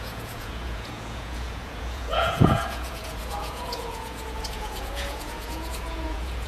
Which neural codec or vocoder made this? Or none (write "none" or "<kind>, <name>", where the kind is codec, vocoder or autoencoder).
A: vocoder, Vocos